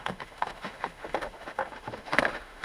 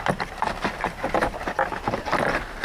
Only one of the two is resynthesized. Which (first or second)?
first